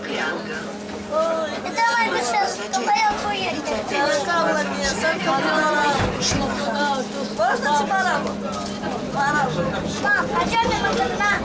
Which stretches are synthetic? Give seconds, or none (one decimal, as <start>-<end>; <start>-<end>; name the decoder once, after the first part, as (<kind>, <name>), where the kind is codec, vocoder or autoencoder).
none